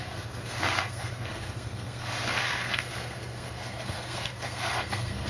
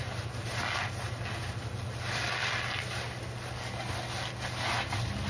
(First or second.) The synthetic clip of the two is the first